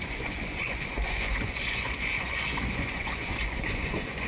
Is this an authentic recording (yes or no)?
no